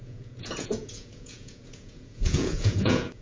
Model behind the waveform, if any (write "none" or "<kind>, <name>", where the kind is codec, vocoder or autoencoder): vocoder, Vocos